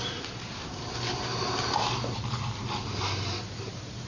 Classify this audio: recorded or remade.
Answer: remade